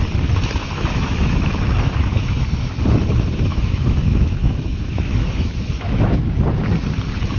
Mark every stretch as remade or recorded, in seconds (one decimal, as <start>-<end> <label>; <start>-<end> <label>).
0.0-0.6 recorded; 0.6-1.9 remade; 1.9-3.5 recorded; 3.5-6.2 remade; 6.2-7.4 recorded